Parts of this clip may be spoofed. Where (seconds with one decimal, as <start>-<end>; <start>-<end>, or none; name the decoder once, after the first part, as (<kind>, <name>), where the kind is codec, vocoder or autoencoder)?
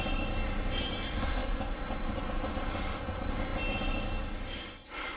none